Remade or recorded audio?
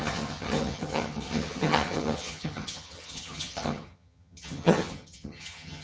remade